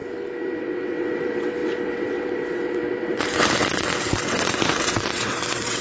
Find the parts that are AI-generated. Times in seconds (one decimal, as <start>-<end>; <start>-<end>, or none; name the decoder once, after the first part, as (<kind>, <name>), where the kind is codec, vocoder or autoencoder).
0.6-5.8 (vocoder, WaveNeXt)